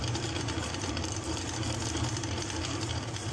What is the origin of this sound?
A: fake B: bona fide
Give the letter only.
A